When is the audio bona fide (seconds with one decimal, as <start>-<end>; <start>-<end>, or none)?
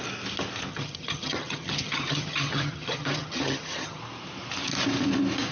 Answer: 0.0-0.7; 4.0-5.5